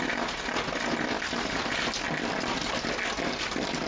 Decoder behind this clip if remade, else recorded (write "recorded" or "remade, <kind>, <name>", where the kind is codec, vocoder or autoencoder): recorded